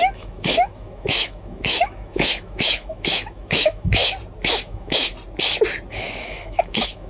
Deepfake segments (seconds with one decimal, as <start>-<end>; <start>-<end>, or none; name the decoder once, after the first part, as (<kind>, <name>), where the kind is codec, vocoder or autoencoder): 0.0-4.0 (autoencoder, DAC-VAE); 4.5-5.1; 5.9-7.1